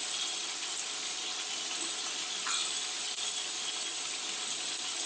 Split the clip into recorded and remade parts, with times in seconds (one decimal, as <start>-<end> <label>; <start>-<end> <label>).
0.0-5.1 recorded